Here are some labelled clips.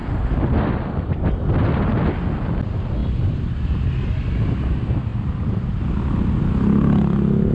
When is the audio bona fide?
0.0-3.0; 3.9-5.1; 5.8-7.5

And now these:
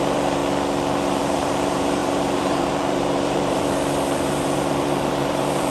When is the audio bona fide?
0.4-1.2

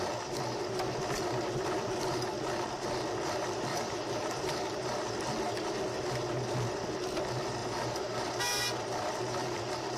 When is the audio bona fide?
0.0-3.7; 4.3-7.6; 8.3-10.0